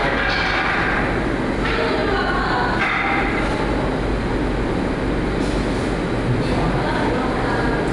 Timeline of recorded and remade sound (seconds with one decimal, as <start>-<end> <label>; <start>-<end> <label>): 0.0-7.9 recorded